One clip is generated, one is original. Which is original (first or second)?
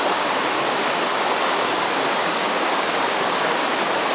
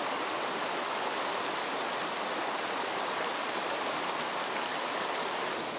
second